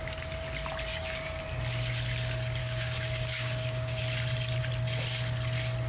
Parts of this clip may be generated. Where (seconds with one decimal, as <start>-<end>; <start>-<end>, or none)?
0.9-1.4; 2.6-4.0